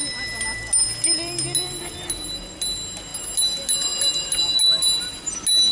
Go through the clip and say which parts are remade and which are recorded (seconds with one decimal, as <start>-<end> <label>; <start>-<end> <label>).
0.0-5.7 recorded